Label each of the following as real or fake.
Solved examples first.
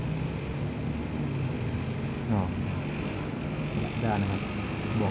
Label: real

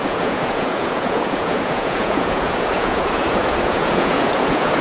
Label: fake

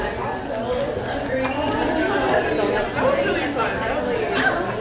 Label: real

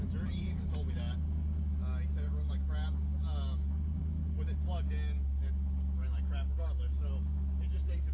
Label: real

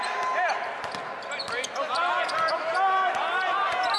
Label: real